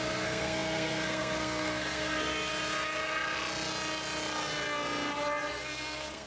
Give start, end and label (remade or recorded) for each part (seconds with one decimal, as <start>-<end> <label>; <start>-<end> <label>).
0.0-2.5 remade; 2.5-5.5 recorded; 5.5-6.3 remade